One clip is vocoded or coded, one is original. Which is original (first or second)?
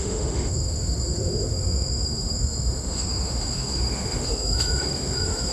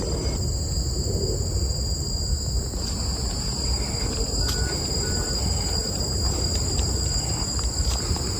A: second